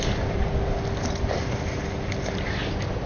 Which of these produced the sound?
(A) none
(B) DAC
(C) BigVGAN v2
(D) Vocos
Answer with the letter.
A